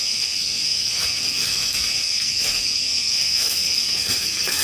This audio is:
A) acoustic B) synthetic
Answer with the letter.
B